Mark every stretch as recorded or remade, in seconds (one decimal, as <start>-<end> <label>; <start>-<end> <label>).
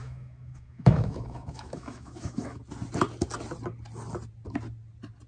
0.0-2.6 remade; 2.6-5.3 recorded